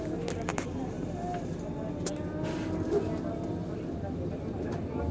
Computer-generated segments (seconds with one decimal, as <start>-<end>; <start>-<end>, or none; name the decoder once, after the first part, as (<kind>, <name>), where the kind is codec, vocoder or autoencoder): none